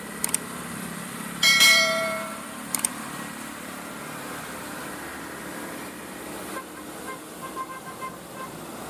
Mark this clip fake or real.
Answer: fake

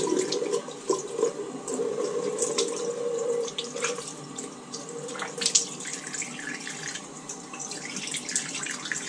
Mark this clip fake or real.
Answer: fake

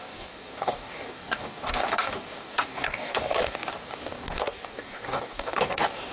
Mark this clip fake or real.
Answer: fake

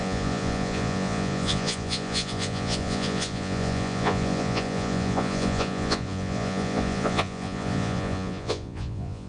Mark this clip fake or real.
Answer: fake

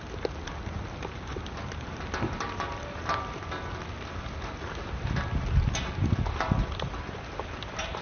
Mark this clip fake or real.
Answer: real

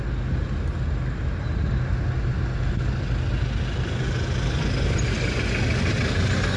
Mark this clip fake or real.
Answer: real